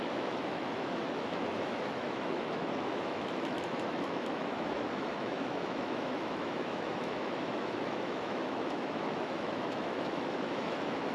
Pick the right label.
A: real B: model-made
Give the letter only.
B